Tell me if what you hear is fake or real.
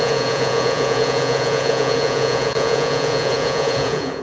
fake